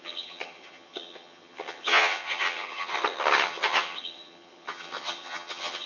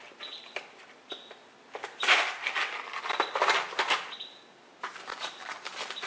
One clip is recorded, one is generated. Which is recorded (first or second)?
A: second